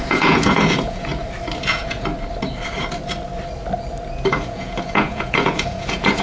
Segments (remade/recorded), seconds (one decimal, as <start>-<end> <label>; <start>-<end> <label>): 0.0-1.1 remade; 1.1-1.6 recorded; 1.6-2.1 remade; 2.1-4.3 recorded; 4.3-6.2 remade